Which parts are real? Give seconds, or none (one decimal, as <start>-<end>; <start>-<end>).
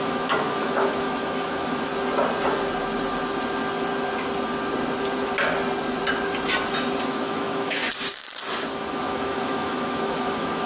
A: 1.9-7.0; 7.8-8.9